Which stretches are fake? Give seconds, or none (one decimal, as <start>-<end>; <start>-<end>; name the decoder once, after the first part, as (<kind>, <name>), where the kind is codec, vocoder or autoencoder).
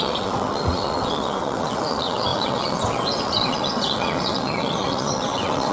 0.0-5.7 (vocoder, WaveNeXt)